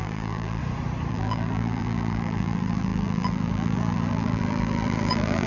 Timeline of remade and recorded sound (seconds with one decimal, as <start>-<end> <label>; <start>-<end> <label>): 0.0-0.6 remade; 0.6-1.1 recorded; 1.1-5.5 remade